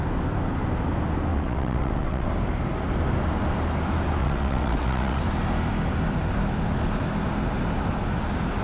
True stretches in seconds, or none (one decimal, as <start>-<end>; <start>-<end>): 0.0-1.3; 2.3-4.2; 5.2-8.6